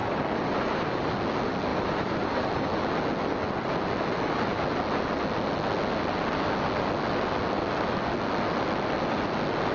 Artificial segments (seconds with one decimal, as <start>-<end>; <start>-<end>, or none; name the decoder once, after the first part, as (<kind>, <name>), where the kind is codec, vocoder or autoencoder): 0.0-1.1 (vocoder, BigVGAN v2); 1.7-2.8